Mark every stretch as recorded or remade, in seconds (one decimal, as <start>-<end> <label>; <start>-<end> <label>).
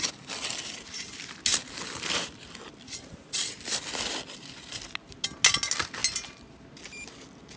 0.0-1.5 recorded; 1.5-4.8 remade; 4.8-7.6 recorded